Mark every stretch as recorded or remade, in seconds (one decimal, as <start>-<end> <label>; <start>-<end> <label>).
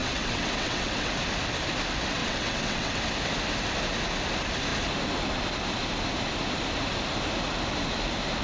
0.0-1.1 remade; 1.1-2.2 recorded; 2.2-3.0 remade; 3.0-8.4 recorded